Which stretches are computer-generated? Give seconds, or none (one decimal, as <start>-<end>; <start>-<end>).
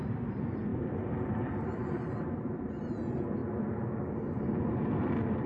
0.0-0.7; 2.3-3.4